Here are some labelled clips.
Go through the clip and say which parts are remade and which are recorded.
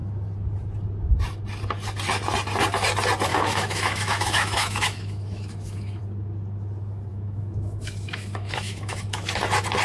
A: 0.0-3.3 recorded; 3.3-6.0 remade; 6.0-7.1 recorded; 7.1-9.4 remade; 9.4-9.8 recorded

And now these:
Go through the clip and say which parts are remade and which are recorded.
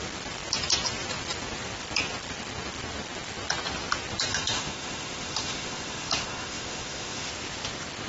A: 0.0-4.3 recorded; 4.3-7.3 remade; 7.3-8.1 recorded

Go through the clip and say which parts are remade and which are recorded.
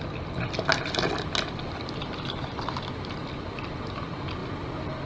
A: 0.0-5.1 recorded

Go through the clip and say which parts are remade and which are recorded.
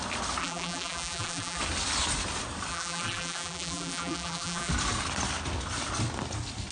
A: 0.0-0.4 recorded; 0.4-1.6 remade; 1.6-2.7 recorded; 2.7-4.7 remade; 4.7-6.7 recorded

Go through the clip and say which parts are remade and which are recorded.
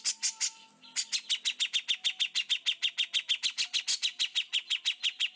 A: 0.0-5.4 recorded